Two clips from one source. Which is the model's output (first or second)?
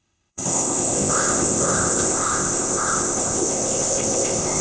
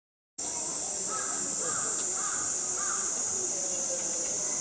first